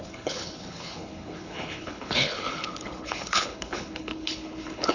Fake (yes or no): yes